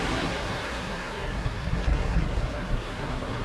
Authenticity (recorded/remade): remade